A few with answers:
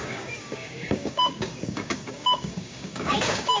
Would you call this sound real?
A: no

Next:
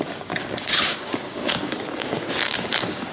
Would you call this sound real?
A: no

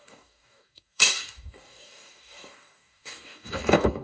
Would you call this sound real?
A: no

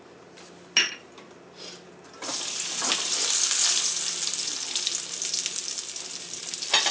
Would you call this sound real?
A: yes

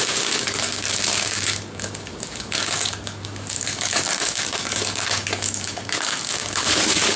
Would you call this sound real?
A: no